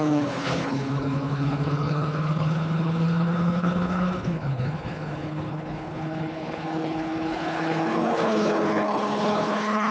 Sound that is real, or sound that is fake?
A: fake